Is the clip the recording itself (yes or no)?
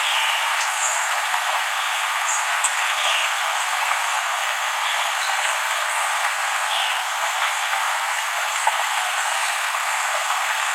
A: no